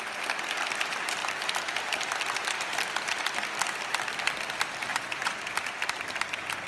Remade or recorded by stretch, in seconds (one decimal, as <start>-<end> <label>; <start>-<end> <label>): 0.0-4.9 recorded; 4.9-5.4 remade; 5.4-6.7 recorded